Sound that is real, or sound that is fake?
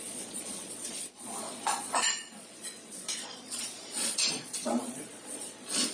fake